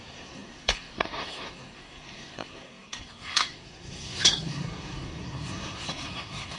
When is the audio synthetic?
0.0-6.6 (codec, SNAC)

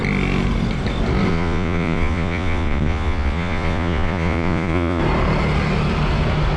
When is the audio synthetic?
1.3-5.0 (vocoder, Vocos)